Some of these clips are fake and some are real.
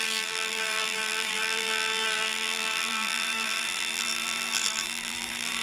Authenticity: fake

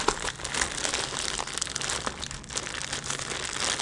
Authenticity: real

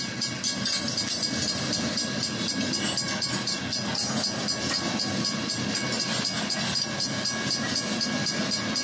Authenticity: real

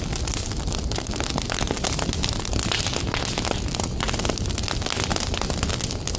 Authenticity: real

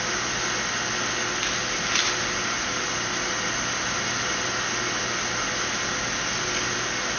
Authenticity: real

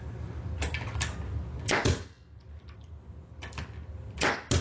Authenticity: real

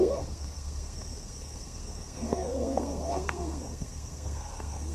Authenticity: fake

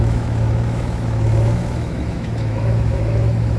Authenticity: fake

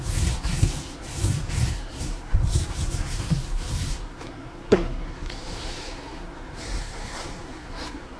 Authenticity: fake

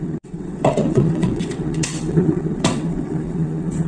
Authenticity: fake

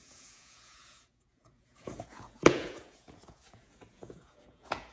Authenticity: fake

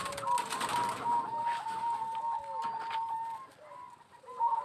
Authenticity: real